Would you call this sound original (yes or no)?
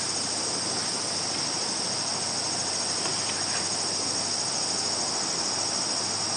yes